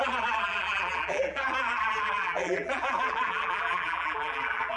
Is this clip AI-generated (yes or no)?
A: yes